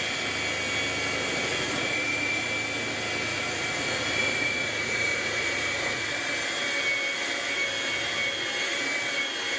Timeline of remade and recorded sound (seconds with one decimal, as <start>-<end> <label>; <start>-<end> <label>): 0.0-1.5 recorded; 1.5-2.5 remade; 2.5-3.3 recorded; 3.3-6.3 remade; 6.3-9.6 recorded